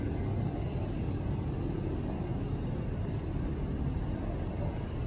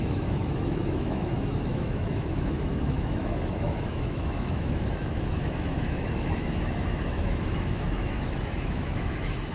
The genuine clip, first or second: first